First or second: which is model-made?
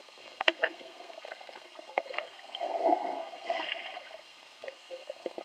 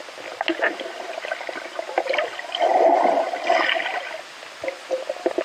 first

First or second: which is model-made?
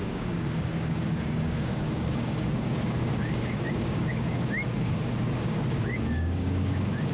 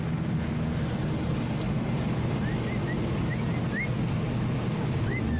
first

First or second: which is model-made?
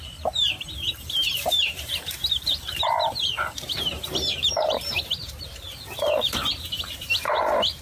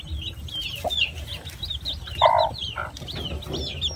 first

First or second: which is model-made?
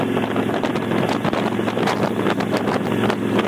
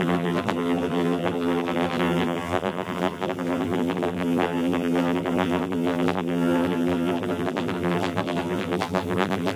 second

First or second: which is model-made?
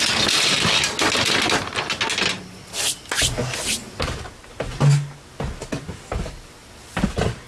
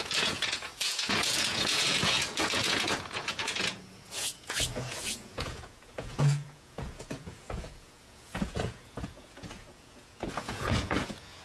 second